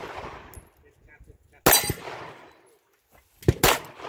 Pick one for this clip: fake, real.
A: real